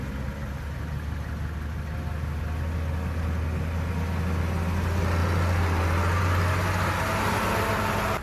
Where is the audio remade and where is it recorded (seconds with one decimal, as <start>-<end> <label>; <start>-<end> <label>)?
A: 0.0-8.2 recorded